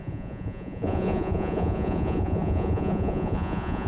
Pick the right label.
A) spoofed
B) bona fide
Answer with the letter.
A